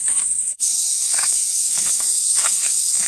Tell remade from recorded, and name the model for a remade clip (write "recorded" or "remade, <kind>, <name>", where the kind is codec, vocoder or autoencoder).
remade, codec, SNAC